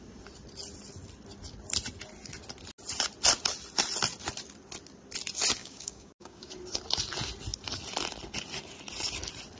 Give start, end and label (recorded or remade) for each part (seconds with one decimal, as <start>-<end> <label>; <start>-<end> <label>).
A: 0.0-5.6 recorded; 5.6-6.5 remade; 6.5-9.6 recorded